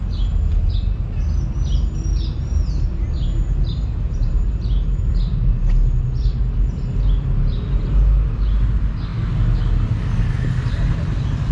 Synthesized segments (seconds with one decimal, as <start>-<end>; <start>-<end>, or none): none